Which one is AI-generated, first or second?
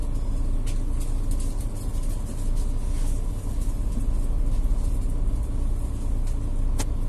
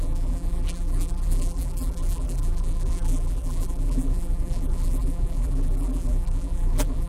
second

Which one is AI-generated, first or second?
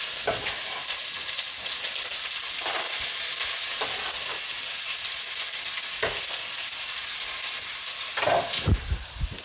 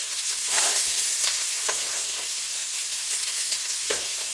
second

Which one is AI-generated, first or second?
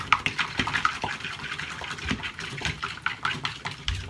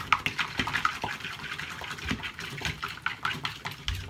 first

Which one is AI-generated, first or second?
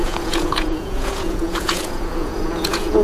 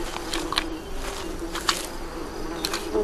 first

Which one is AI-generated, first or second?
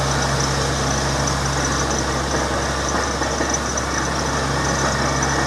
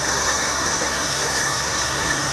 second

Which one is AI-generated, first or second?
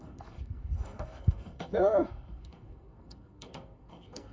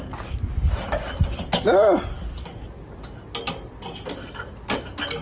first